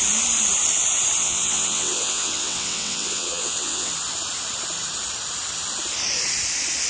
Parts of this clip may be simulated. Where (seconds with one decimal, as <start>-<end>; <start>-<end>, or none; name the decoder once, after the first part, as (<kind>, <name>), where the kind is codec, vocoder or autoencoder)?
1.2-3.9 (vocoder, WaveNeXt)